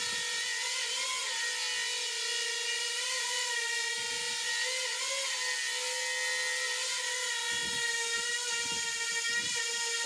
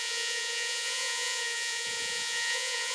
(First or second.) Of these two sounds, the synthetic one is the second